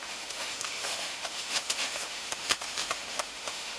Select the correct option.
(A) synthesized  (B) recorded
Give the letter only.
A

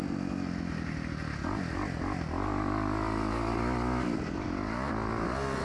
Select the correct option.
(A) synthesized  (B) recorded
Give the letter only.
B